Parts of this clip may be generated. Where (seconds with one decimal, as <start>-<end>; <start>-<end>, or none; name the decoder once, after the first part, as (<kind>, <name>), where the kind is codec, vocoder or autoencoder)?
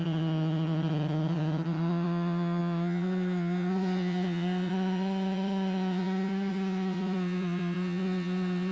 0.0-8.7 (vocoder, HiFi-GAN)